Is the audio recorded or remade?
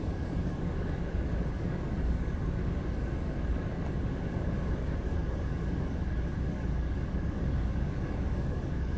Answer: remade